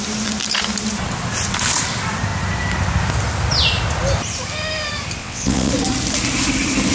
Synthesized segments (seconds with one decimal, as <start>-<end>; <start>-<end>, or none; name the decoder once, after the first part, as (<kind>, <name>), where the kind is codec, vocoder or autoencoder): 5.2-5.7 (vocoder, WaveNeXt)